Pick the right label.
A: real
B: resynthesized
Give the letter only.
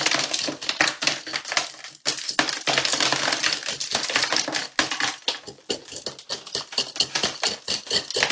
A